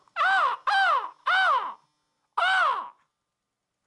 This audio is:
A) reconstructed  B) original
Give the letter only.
B